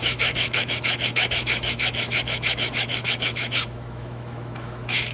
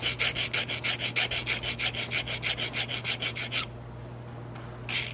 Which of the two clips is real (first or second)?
second